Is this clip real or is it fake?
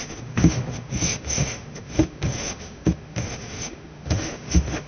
fake